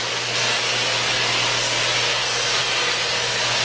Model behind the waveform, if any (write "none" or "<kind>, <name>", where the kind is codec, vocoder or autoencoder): none